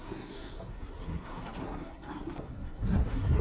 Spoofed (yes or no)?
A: yes